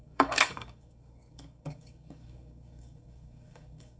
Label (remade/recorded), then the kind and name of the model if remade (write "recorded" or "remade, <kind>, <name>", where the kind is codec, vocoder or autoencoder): remade, codec, DAC